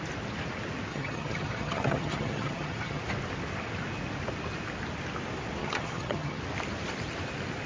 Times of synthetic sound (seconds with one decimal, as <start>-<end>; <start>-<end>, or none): 0.9-3.0; 5.6-6.4